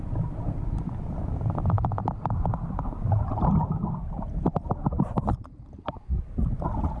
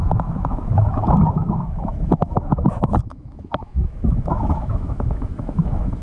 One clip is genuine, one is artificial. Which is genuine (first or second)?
first